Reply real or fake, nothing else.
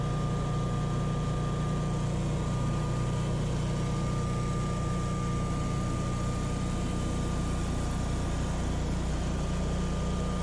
real